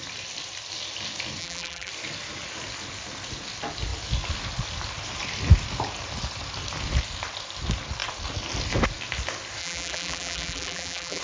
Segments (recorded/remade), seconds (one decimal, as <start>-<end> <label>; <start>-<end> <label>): 0.0-1.4 recorded; 1.4-1.9 remade; 1.9-9.6 recorded; 9.6-11.2 remade